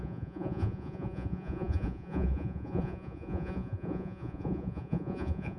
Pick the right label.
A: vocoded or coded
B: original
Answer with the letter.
A